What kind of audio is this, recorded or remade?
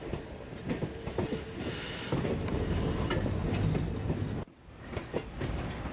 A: remade